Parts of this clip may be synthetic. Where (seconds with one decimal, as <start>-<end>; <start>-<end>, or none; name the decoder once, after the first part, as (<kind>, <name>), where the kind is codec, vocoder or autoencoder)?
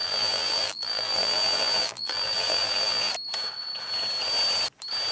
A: 0.0-3.1 (vocoder, BigVGAN v2)